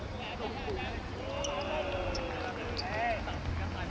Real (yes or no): yes